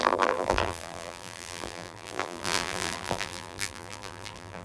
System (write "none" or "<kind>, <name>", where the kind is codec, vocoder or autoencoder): vocoder, BigVGAN v2